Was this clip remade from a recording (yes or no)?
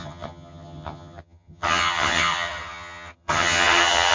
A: yes